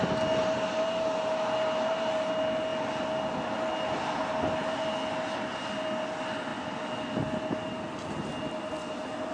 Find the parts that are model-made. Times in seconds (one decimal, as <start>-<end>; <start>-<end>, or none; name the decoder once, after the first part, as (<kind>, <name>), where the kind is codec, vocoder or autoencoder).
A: none